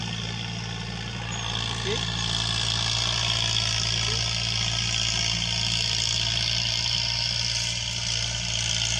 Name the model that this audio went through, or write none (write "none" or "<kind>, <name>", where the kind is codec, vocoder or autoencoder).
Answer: none